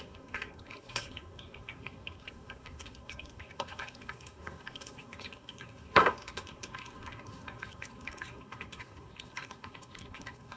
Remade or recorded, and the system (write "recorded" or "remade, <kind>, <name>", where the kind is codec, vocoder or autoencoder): remade, codec, SNAC